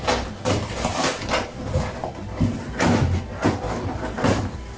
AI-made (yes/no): no